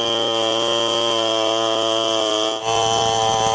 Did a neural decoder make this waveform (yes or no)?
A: no